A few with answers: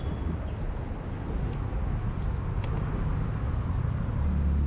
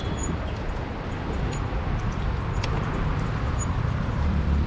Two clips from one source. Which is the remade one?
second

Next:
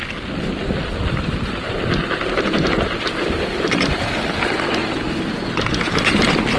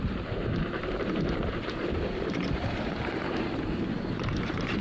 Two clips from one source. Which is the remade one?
second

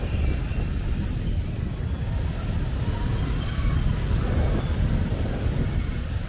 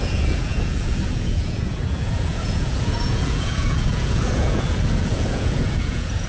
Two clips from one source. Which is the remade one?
second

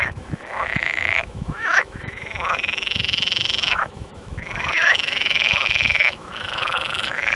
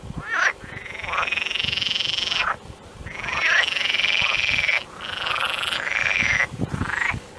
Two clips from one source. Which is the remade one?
first